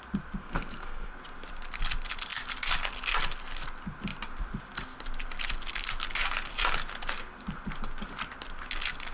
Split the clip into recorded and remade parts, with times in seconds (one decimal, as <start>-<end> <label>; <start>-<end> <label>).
0.0-0.4 recorded; 0.4-1.1 remade; 1.1-9.1 recorded